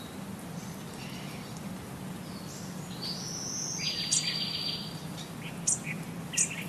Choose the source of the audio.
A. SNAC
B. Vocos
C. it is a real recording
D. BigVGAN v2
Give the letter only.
C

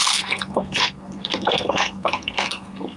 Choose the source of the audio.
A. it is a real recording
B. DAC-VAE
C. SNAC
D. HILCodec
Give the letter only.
C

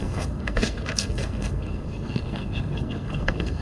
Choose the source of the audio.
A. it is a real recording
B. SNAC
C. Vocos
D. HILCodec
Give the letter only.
B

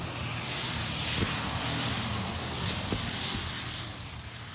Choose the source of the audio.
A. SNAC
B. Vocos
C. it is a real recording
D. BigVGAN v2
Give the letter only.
C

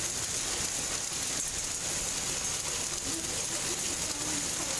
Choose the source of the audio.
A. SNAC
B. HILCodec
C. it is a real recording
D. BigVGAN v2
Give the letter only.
C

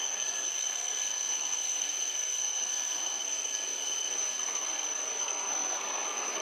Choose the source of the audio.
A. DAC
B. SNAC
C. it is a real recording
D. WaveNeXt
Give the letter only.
B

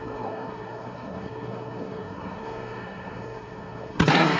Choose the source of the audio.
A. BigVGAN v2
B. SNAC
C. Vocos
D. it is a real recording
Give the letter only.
B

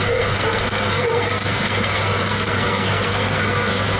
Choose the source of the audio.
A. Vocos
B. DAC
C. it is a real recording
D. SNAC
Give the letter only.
D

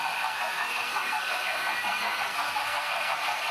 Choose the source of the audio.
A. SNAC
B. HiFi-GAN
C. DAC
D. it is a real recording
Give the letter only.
A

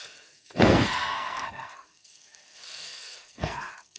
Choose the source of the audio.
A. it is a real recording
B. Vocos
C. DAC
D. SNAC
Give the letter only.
D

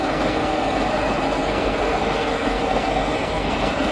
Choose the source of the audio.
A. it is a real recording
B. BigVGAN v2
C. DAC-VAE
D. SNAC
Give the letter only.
D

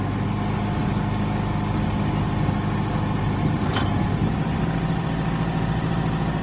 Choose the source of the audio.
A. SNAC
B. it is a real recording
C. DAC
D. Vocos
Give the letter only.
B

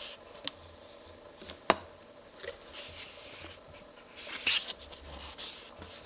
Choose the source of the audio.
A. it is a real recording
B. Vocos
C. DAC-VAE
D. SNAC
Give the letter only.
A